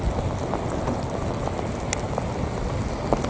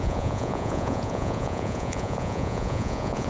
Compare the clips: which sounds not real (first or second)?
second